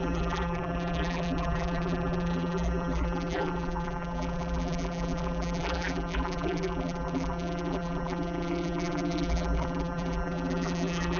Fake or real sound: fake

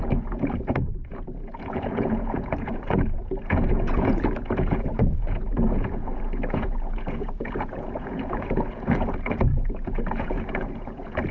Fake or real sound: fake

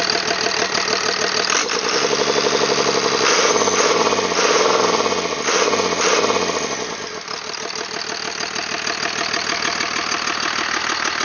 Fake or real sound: real